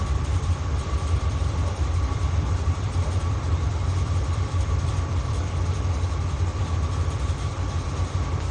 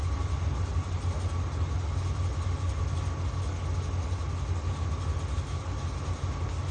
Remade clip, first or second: first